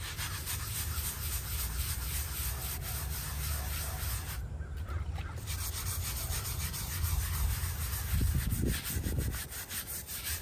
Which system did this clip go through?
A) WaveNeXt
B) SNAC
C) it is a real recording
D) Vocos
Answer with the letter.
C